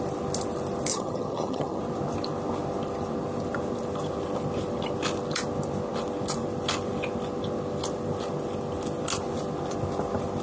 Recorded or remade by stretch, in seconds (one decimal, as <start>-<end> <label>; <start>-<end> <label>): 0.0-0.9 recorded; 0.9-1.8 remade; 1.8-10.4 recorded